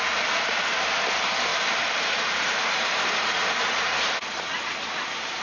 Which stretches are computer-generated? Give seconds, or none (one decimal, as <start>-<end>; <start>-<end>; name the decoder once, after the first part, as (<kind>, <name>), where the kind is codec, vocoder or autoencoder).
0.0-5.4 (vocoder, BigVGAN v2)